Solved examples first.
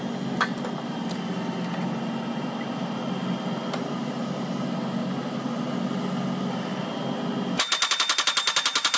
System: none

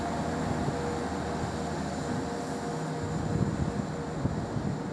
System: none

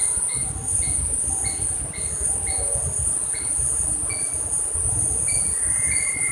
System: vocoder, BigVGAN v2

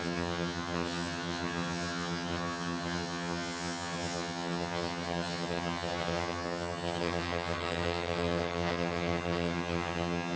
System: vocoder, HiFi-GAN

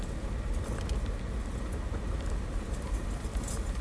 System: none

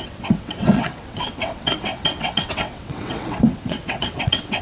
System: vocoder, WaveNeXt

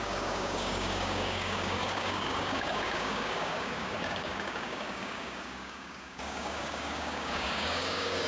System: codec, DAC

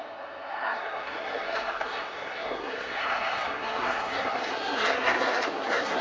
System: codec, SNAC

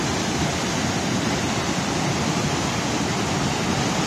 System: none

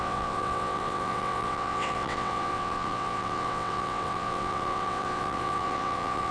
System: vocoder, WaveNeXt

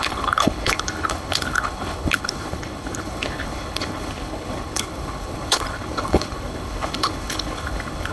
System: codec, HILCodec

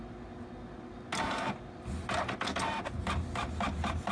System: none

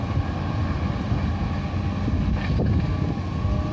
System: none